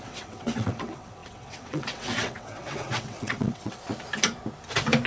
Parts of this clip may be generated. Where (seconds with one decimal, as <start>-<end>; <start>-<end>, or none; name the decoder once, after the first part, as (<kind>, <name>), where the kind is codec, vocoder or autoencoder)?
0.0-3.9 (vocoder, WaveNeXt)